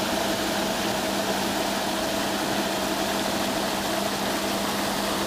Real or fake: real